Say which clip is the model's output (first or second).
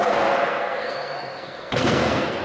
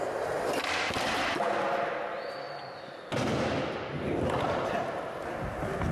first